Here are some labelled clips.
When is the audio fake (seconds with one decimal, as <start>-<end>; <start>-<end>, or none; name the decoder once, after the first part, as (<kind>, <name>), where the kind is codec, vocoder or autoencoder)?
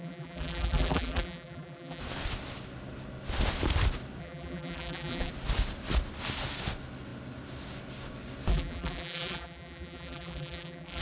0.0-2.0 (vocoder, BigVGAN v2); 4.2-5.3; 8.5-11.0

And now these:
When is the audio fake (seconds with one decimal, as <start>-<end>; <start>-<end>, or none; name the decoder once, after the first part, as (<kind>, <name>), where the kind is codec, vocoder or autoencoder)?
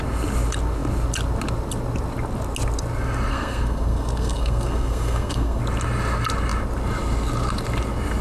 3.3-5.6 (codec, SNAC)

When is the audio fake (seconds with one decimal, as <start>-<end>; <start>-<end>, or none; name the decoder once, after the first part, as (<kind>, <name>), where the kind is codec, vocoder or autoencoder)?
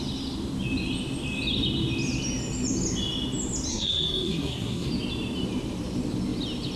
3.7-4.9 (codec, SNAC)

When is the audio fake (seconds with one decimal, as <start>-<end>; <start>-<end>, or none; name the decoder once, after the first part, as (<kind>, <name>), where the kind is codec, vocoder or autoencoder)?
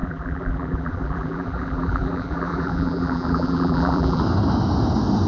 0.0-4.2 (vocoder, BigVGAN v2)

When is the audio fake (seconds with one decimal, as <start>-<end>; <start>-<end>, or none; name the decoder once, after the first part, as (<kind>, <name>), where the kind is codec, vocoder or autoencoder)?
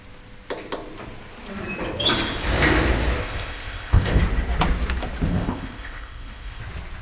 3.2-4.2 (codec, ZipCodec); 5.3-6.6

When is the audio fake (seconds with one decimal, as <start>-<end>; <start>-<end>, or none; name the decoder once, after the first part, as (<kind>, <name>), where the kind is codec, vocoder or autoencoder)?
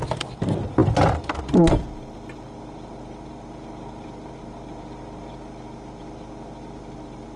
none